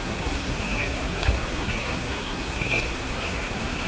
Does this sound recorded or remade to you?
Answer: remade